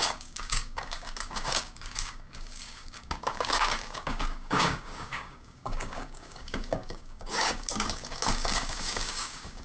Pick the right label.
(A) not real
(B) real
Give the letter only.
A